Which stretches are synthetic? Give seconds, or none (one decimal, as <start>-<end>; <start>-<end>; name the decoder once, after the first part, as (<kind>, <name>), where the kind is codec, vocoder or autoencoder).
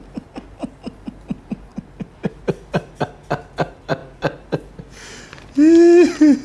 4.0-4.8 (vocoder, BigVGAN v2)